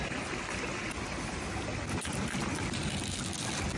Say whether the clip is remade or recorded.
recorded